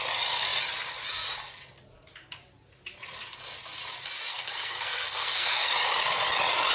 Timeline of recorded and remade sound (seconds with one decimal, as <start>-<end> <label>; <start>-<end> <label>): 0.0-4.3 recorded; 4.3-5.7 remade; 5.7-6.7 recorded